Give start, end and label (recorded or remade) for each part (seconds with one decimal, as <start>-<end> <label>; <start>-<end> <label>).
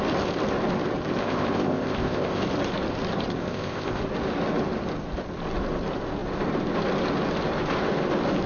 0.0-1.2 recorded; 1.2-2.4 remade; 2.4-3.4 recorded; 3.4-4.0 remade; 4.0-8.5 recorded